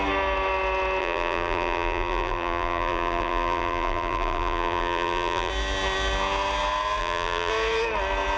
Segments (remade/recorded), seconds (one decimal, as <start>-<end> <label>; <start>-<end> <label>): 0.0-1.0 recorded; 1.0-5.5 remade; 5.5-7.0 recorded; 7.0-7.5 remade; 7.5-8.4 recorded